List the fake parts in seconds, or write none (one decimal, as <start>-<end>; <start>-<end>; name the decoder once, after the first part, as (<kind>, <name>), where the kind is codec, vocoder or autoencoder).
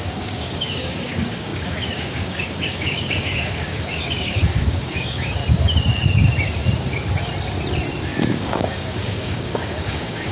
0.0-5.4 (codec, DAC); 8.3-10.3